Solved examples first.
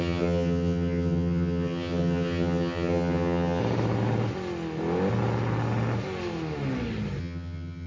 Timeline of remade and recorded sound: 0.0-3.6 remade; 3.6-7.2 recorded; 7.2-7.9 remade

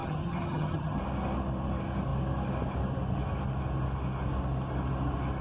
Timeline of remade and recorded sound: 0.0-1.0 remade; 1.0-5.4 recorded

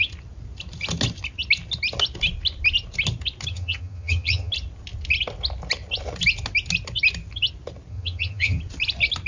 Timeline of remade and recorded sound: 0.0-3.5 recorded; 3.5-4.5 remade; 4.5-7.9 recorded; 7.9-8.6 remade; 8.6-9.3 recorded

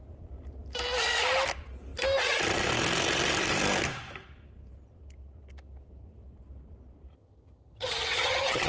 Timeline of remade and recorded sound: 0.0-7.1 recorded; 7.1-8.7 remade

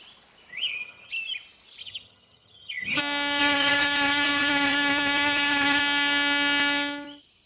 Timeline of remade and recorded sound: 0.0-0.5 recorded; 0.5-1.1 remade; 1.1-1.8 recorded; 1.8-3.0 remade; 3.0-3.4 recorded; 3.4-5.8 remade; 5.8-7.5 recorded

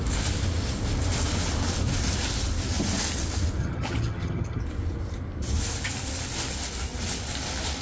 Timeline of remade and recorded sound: 0.0-3.6 recorded; 3.6-4.6 remade; 4.6-7.8 recorded

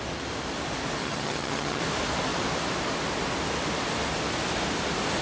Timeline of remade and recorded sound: 0.0-1.0 recorded; 1.0-1.8 remade; 1.8-5.2 recorded

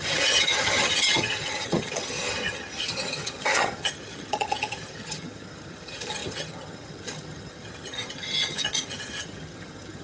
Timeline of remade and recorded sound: 0.0-10.0 remade